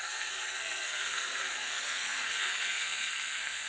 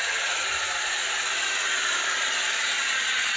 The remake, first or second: first